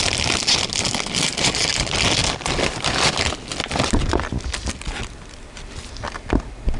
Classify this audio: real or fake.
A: real